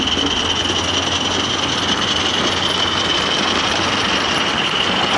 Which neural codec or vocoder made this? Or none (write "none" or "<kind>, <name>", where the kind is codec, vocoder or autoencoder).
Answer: none